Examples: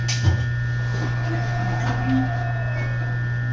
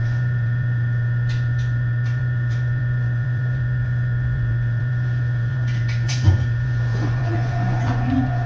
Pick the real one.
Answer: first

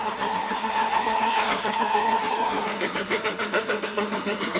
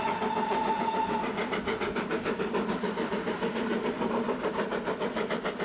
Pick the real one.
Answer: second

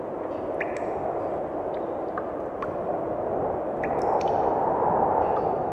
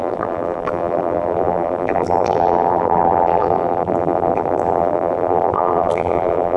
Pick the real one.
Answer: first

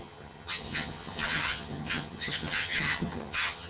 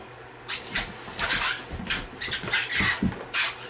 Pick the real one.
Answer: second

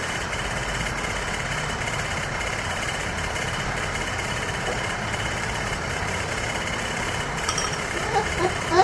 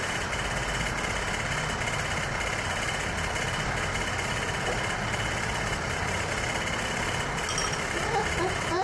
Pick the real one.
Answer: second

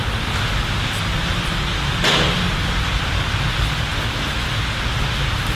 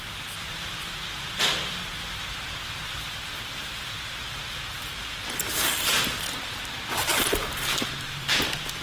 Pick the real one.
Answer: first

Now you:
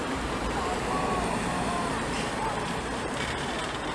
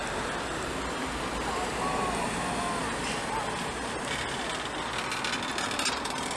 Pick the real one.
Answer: second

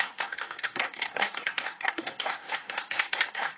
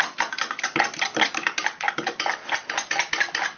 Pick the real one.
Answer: second